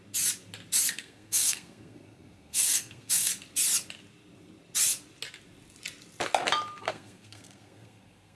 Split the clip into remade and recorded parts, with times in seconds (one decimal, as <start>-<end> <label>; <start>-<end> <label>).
0.0-0.9 recorded; 0.9-3.3 remade; 3.3-6.8 recorded; 6.8-8.3 remade